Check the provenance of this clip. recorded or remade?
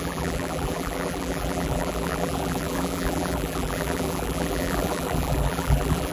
remade